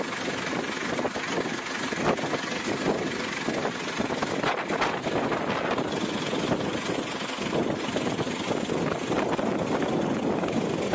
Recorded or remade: recorded